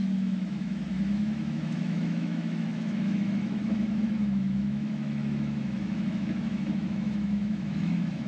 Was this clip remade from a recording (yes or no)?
yes